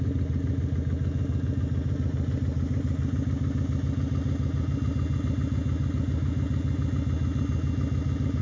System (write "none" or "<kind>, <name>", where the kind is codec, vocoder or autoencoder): none